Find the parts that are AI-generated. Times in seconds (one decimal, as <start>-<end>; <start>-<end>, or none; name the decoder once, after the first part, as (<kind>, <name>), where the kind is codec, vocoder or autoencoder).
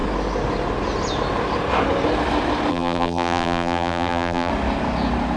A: 2.7-4.5 (vocoder, BigVGAN v2)